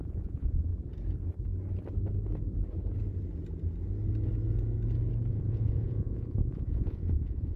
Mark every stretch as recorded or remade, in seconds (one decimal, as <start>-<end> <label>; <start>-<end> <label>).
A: 0.0-0.7 remade; 0.7-5.3 recorded; 5.3-7.6 remade